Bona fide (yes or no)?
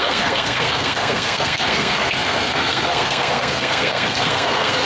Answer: no